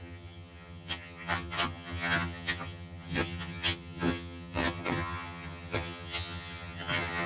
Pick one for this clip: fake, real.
fake